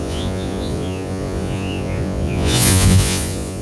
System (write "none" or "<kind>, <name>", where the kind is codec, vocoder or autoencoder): vocoder, Vocos